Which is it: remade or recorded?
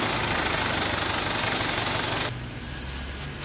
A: recorded